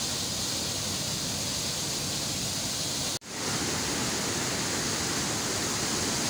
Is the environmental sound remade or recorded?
recorded